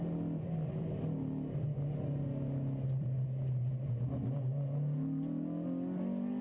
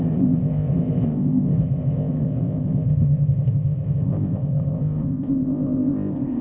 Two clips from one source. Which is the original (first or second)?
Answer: first